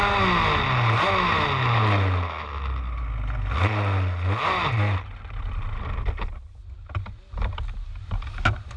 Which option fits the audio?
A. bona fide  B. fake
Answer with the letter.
A